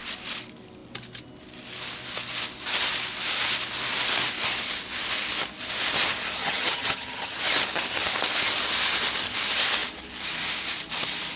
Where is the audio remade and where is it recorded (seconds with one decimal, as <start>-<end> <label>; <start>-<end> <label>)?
0.0-6.4 recorded; 6.4-7.4 remade; 7.4-11.4 recorded